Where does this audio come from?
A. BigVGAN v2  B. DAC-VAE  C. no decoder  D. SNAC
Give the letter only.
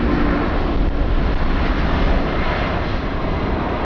C